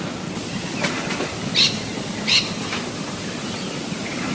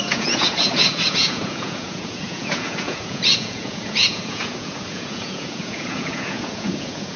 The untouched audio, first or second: first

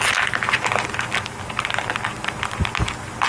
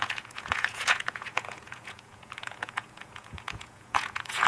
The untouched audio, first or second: first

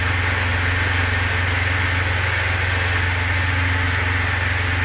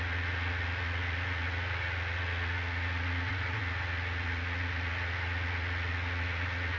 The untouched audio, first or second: first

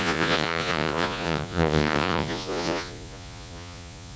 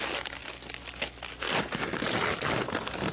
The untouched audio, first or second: second